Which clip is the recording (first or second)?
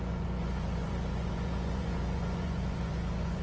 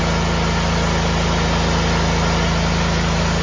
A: second